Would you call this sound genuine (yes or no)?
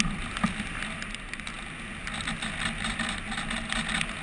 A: yes